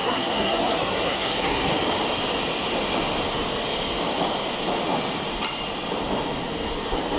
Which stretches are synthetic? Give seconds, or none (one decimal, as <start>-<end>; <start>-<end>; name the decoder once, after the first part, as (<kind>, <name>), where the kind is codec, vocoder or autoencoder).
0.0-1.7 (codec, SNAC)